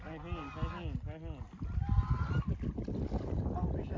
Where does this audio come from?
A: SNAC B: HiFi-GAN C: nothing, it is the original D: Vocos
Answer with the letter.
C